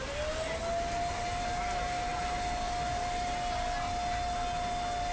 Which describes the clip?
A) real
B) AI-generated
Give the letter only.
A